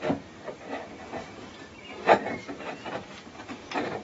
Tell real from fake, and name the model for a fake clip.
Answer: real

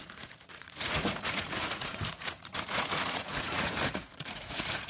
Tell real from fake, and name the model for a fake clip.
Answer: fake, vocoder, Vocos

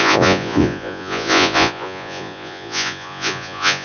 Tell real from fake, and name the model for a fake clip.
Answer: fake, vocoder, Vocos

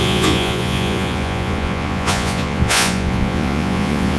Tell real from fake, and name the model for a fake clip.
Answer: fake, vocoder, Vocos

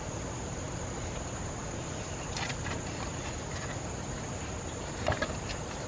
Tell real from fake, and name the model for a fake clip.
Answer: real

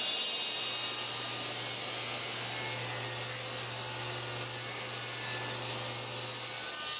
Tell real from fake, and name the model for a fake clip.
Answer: real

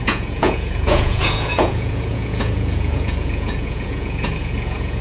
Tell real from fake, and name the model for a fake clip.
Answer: fake, vocoder, Vocos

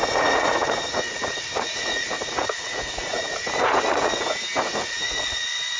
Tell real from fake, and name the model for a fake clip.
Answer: fake, vocoder, Vocos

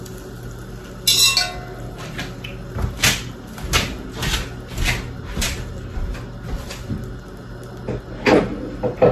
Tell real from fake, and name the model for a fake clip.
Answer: real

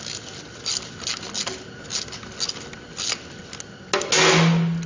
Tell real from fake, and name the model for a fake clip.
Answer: real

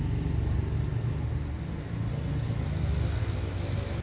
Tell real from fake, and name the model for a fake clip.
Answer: real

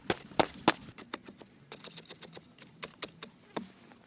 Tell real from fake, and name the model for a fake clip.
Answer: real